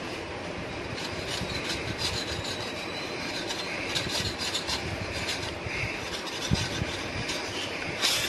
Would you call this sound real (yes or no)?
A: no